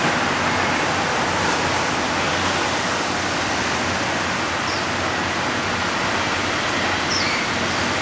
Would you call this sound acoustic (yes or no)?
yes